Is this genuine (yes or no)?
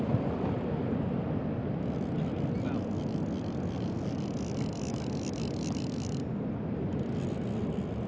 yes